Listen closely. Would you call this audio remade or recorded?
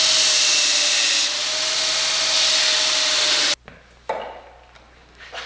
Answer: recorded